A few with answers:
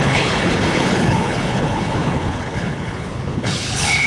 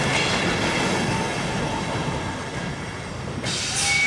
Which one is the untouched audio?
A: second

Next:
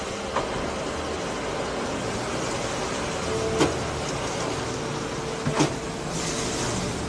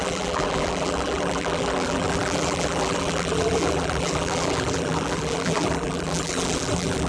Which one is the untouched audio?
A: first